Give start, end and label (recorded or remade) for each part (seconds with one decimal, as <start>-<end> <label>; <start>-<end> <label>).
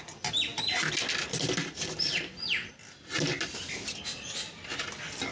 0.0-5.3 recorded